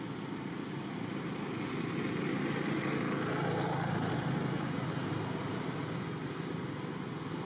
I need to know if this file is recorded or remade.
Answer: recorded